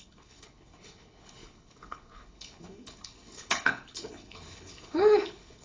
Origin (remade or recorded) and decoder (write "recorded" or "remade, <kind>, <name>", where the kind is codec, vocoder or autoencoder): remade, codec, HILCodec